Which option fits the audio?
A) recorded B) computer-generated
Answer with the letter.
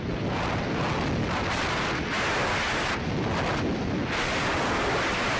A